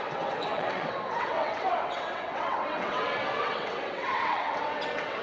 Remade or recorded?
remade